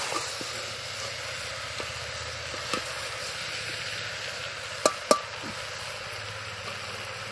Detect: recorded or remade recorded